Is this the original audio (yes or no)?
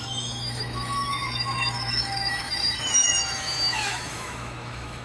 no